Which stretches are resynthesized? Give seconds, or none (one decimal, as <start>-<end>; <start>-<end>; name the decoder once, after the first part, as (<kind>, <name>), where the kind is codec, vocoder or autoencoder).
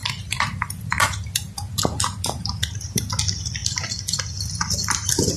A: none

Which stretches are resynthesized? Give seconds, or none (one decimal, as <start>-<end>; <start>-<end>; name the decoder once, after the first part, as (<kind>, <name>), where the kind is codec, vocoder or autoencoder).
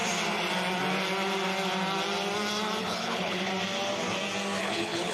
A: 2.8-3.5 (codec, HILCodec); 4.6-5.1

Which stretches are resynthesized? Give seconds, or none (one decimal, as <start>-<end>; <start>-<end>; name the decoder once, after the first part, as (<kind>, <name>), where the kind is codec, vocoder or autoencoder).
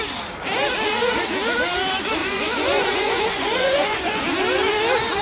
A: 2.2-4.2 (vocoder, Vocos)